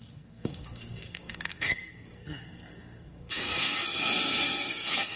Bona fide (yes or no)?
no